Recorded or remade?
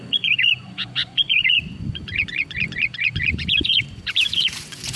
remade